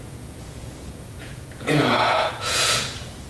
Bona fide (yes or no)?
no